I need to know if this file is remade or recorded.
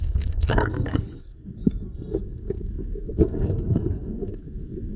remade